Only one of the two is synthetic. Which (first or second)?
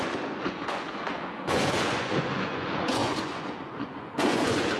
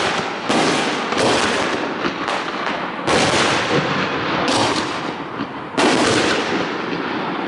first